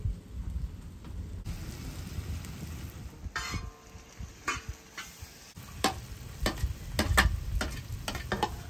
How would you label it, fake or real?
real